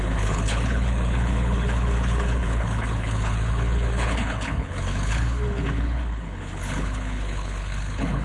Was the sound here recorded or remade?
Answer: remade